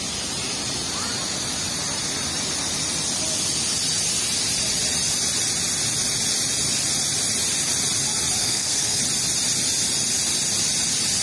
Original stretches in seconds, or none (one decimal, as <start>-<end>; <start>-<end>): 0.0-8.4; 9.0-11.2